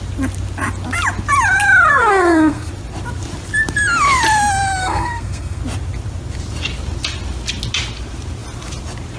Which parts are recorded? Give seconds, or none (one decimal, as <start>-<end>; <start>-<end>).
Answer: 0.0-1.9; 2.7-4.8; 5.6-9.2